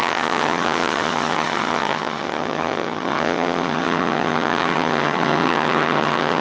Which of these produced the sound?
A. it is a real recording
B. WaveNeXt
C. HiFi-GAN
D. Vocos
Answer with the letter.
C